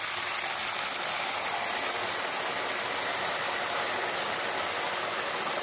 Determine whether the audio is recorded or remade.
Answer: recorded